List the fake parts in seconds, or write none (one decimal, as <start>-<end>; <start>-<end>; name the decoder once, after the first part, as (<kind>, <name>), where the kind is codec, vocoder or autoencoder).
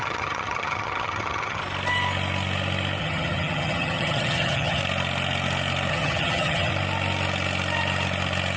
0.0-1.6 (vocoder, HiFi-GAN); 3.0-4.8; 5.9-6.7